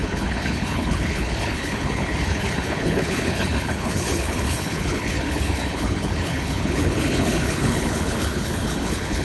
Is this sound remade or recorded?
remade